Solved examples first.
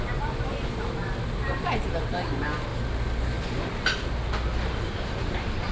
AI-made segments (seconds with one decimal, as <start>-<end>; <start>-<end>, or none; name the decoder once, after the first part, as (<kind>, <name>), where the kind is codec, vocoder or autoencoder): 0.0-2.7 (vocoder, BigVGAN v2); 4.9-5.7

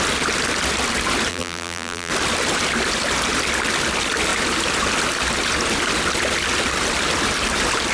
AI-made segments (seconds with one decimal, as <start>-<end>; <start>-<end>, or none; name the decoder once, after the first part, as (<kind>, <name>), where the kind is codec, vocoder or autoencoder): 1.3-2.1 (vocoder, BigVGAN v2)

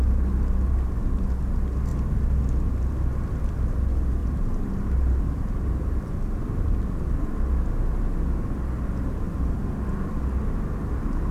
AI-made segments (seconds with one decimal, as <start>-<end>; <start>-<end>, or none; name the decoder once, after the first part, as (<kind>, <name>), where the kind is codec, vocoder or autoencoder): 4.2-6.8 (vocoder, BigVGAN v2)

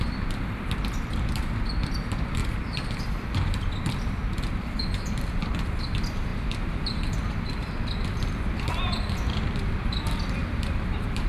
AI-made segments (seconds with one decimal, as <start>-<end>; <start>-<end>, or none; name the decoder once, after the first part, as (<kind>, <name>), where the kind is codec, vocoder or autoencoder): 0.0-11.3 (vocoder, BigVGAN v2)

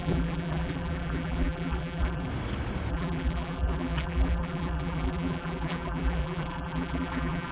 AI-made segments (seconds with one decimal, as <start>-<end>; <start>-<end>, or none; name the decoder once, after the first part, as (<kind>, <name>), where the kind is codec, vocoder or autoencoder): 0.0-2.3 (vocoder, BigVGAN v2); 2.9-7.5